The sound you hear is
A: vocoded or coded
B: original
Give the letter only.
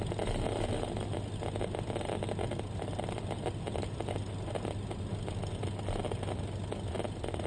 B